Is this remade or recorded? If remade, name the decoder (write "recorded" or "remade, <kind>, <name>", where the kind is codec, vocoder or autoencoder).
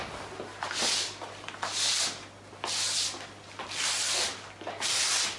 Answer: recorded